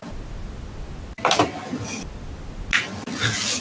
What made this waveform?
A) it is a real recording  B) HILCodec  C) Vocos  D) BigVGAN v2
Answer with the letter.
A